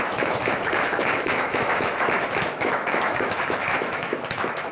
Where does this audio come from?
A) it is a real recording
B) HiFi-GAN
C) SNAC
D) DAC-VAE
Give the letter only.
D